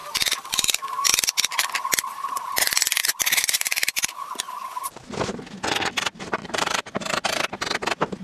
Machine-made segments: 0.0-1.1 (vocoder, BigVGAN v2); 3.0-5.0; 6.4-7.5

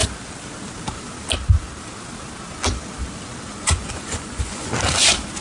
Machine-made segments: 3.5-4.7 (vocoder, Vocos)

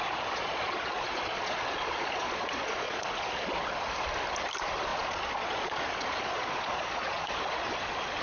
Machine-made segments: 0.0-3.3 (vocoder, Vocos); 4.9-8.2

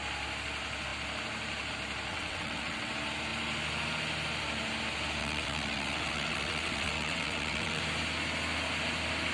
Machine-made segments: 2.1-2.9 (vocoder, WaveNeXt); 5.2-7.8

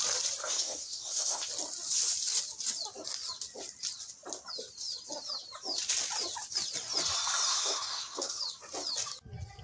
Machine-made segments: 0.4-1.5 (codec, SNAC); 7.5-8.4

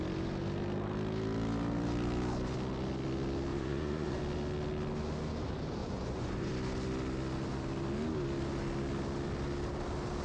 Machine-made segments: 3.5-4.2 (vocoder, Vocos); 5.8-6.5

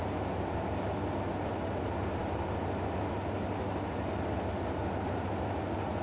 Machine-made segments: none

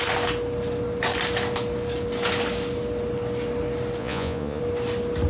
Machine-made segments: 4.0-4.6 (vocoder, Vocos)